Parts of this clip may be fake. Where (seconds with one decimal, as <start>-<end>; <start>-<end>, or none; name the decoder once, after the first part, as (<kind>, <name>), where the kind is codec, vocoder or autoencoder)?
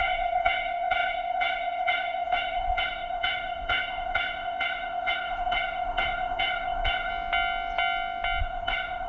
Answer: 0.0-7.1 (codec, ZipCodec); 8.4-9.1